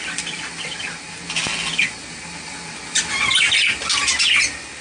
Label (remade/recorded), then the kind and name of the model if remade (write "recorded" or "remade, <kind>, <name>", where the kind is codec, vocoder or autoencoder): recorded